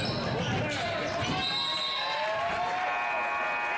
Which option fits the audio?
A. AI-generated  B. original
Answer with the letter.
B